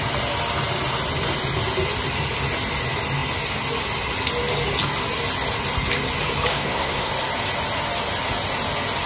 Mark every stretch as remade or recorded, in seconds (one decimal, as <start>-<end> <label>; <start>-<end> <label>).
0.0-6.5 recorded; 6.5-7.1 remade; 7.1-9.1 recorded